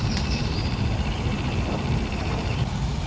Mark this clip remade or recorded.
remade